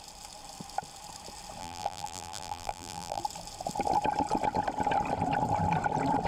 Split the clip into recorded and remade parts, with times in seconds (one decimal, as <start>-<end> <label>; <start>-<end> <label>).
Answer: 0.0-1.6 recorded; 1.6-3.2 remade; 3.2-6.3 recorded